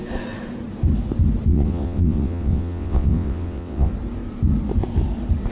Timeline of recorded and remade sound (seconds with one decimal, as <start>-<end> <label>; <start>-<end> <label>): 0.0-1.5 recorded; 1.5-3.9 remade; 3.9-5.5 recorded